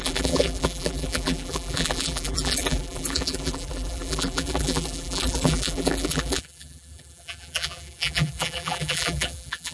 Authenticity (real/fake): fake